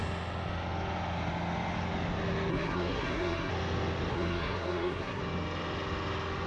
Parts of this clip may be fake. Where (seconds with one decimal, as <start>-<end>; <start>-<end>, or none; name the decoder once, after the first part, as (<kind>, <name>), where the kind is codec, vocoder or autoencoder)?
2.5-3.5 (codec, SNAC); 4.1-5.2